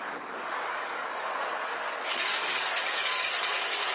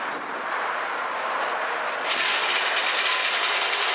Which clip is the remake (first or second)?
first